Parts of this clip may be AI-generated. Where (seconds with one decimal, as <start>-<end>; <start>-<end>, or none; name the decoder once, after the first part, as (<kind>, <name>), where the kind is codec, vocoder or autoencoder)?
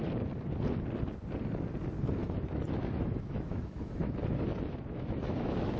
2.2-5.8 (autoencoder, DAC-VAE)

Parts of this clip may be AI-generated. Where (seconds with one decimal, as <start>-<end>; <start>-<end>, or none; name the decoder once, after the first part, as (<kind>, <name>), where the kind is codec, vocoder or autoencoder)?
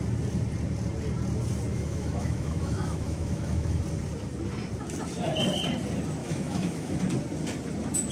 1.7-3.8 (autoencoder, DAC-VAE); 6.2-7.0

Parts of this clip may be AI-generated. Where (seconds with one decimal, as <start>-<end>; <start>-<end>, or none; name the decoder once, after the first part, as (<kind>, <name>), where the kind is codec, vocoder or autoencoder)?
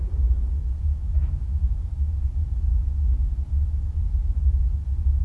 0.9-2.1 (autoencoder, DAC-VAE)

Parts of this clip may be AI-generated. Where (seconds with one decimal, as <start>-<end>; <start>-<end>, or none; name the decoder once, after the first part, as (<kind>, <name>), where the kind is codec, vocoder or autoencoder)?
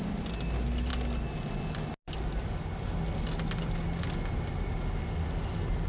none